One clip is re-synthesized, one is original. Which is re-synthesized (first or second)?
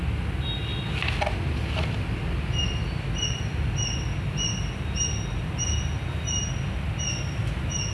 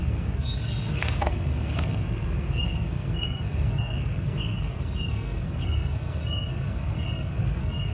second